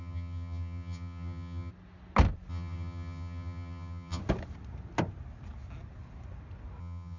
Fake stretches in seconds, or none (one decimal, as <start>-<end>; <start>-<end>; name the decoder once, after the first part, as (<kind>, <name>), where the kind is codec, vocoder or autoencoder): 0.0-1.7 (vocoder, HiFi-GAN); 2.5-4.2; 6.8-7.2